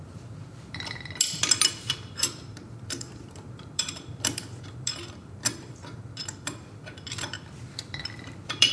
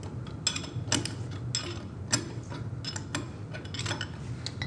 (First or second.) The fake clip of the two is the first